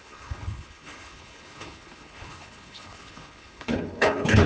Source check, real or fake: fake